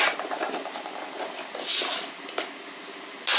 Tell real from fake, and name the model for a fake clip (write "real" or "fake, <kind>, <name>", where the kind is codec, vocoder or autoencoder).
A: real